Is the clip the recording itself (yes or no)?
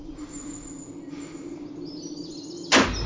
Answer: yes